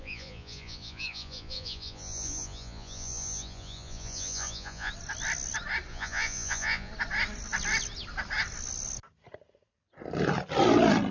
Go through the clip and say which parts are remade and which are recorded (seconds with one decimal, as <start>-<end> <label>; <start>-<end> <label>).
0.0-4.9 remade; 4.9-5.9 recorded; 5.9-6.9 remade; 6.9-11.1 recorded

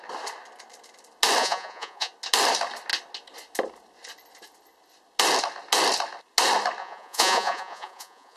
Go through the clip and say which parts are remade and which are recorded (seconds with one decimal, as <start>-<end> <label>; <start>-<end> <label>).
0.0-1.4 recorded; 1.4-2.1 remade; 2.1-6.8 recorded; 6.8-8.4 remade

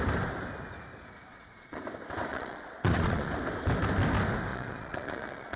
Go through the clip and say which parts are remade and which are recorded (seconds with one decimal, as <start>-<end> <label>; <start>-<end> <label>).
0.0-1.3 recorded; 1.3-1.8 remade; 1.8-2.3 recorded; 2.3-3.3 remade; 3.3-4.5 recorded; 4.5-5.6 remade

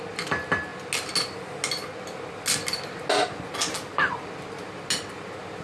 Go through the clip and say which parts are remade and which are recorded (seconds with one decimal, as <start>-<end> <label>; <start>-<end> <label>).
0.0-5.6 recorded

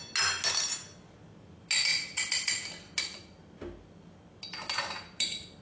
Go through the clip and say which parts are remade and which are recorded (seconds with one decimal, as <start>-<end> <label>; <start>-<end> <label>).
0.0-5.6 recorded